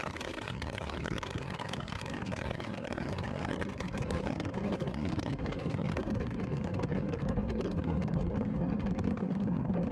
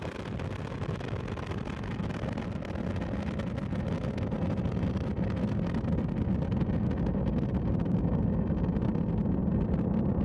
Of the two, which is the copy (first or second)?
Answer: first